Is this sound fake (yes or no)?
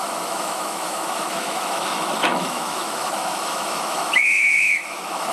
yes